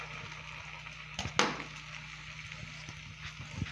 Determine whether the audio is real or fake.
real